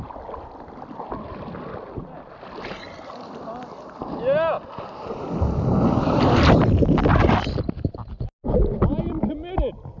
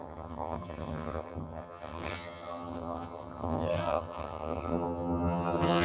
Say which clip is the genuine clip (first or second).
first